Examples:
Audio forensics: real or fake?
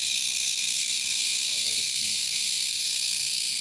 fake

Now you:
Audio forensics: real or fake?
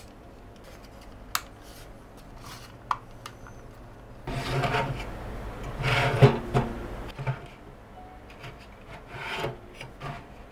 real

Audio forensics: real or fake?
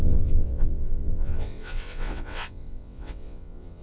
fake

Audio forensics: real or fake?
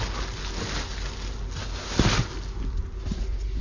real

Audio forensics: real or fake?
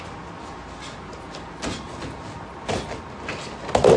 real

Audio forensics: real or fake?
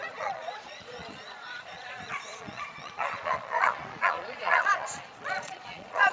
fake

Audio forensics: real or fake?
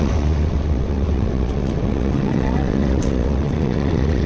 fake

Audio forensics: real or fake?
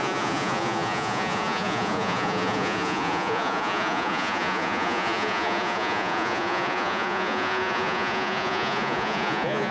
fake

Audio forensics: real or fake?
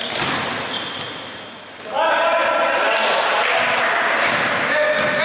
real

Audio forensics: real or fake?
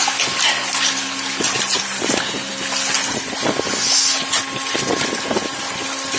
real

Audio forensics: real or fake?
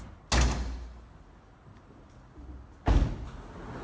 real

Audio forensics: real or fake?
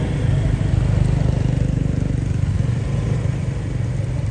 real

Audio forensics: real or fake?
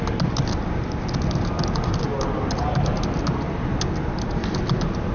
real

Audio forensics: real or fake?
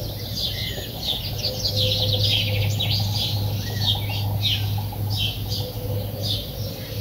real